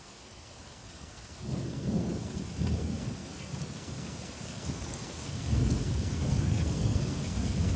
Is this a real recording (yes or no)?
no